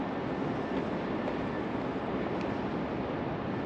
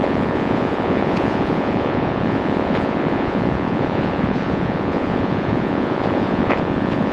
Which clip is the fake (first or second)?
second